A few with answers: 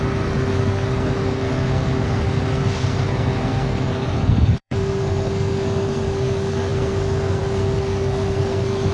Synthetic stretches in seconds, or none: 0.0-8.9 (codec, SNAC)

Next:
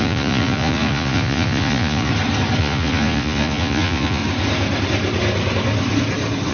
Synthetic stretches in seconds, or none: 0.0-2.1 (vocoder, Vocos); 2.6-4.2

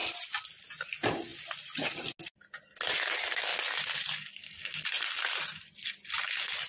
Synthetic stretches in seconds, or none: none

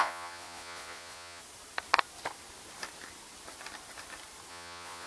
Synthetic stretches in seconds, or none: 0.0-1.4 (vocoder, Vocos); 4.5-5.1